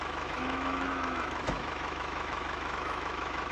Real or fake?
fake